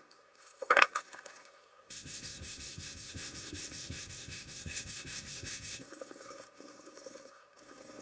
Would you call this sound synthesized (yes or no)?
yes